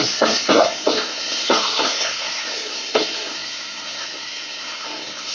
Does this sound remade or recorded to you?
remade